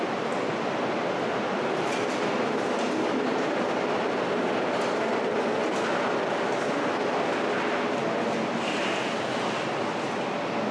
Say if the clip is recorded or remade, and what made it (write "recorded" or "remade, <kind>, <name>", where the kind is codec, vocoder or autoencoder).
recorded